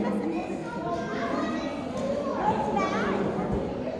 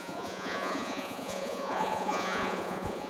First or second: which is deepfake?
second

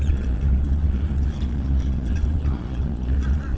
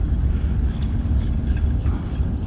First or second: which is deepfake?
first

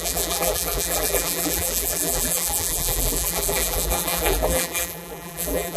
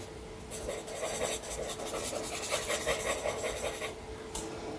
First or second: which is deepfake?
first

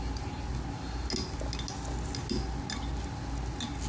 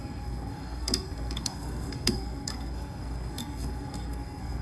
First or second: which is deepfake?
second